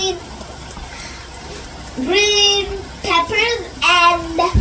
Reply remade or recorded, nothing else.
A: remade